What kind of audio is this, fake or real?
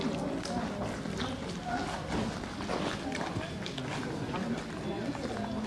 real